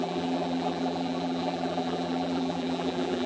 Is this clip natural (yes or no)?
no